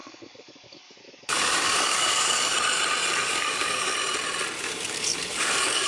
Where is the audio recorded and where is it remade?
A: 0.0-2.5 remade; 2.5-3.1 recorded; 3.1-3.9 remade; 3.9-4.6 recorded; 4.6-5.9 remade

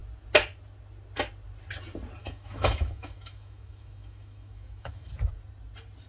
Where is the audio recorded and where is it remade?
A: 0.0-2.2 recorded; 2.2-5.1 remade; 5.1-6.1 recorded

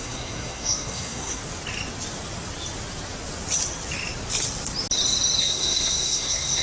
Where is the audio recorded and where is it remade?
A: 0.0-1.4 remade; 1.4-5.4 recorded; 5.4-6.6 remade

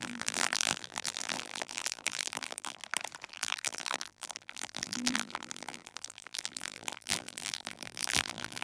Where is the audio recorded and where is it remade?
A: 0.0-2.8 remade; 2.8-3.3 recorded; 3.3-8.6 remade

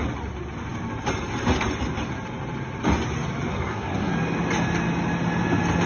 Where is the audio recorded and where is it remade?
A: 0.0-3.5 recorded; 3.5-4.1 remade; 4.1-5.9 recorded

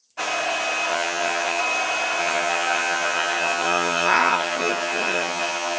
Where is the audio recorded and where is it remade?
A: 0.0-0.9 recorded; 0.9-1.6 remade; 1.6-2.2 recorded; 2.2-5.8 remade

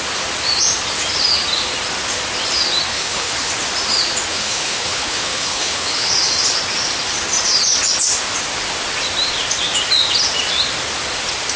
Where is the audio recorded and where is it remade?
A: 0.0-2.9 recorded; 2.9-3.5 remade; 3.5-4.3 recorded; 4.3-6.1 remade; 6.1-11.6 recorded